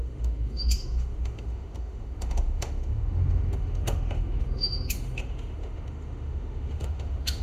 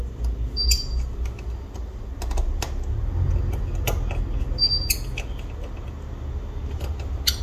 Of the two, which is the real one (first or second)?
second